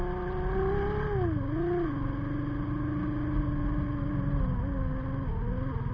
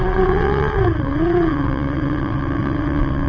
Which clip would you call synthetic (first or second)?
second